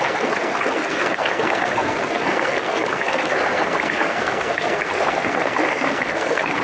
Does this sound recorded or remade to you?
remade